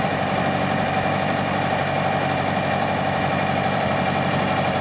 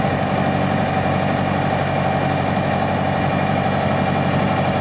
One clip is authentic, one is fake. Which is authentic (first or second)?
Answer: second